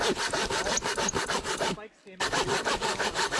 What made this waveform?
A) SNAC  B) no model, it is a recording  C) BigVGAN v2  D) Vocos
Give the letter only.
B